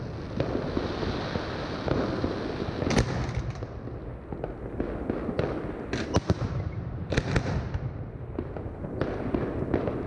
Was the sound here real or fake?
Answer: real